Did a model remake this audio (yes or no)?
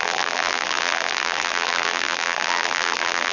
yes